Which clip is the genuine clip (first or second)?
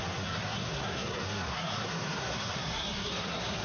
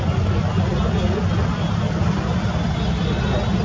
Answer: second